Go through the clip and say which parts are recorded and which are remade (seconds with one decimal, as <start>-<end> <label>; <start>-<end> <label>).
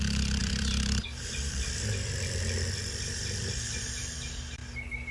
0.0-0.4 recorded; 0.4-3.5 remade; 3.5-5.1 recorded